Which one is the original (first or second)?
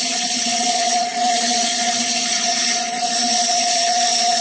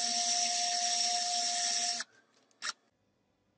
second